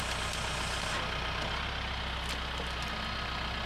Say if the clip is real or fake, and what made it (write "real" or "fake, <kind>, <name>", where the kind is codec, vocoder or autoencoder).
real